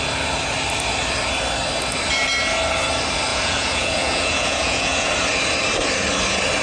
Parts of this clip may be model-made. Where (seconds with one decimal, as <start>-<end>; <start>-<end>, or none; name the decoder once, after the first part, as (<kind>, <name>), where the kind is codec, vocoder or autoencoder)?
3.3-5.1 (vocoder, Vocos)